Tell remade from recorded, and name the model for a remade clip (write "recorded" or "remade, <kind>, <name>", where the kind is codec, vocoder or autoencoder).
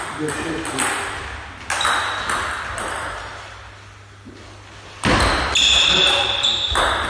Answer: recorded